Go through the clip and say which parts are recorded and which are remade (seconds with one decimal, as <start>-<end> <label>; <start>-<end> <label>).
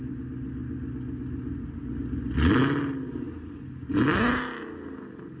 0.0-5.4 recorded